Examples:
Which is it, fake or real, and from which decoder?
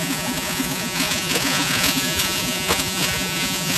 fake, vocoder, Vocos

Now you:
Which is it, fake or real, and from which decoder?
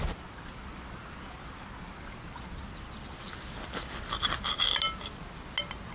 real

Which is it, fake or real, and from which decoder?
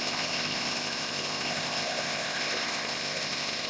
fake, codec, ZipCodec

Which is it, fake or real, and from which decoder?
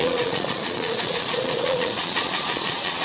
fake, vocoder, Vocos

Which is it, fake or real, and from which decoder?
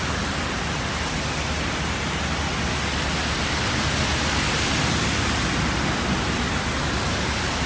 real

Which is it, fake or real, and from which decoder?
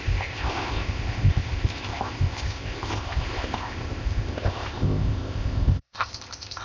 fake, codec, ZipCodec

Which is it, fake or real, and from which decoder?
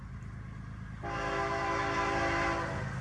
real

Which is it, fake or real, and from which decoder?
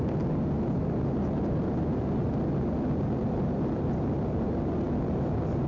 real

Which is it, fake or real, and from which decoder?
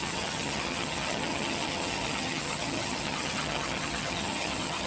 fake, vocoder, HiFi-GAN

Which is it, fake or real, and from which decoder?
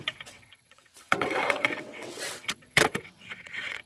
fake, vocoder, WaveNeXt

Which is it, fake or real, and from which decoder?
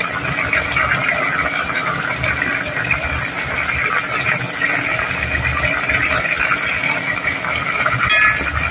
real